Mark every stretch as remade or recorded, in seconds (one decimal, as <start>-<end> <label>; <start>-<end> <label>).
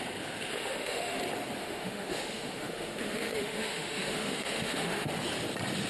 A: 0.0-0.5 recorded; 0.5-1.2 remade; 1.2-1.6 recorded; 1.6-5.1 remade; 5.1-5.9 recorded